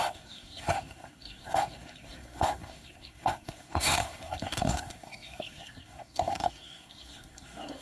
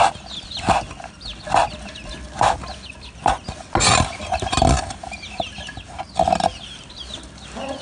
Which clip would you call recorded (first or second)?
second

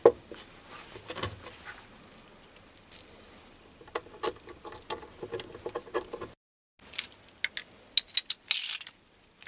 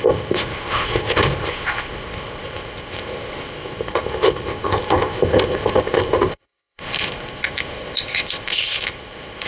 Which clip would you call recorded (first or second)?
first